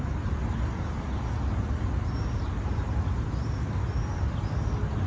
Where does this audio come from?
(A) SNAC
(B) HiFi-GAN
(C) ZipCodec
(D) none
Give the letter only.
D